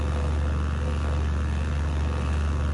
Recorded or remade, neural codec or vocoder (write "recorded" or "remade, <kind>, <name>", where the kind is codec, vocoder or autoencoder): recorded